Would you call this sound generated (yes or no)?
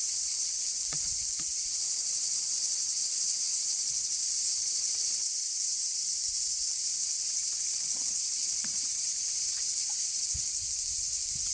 yes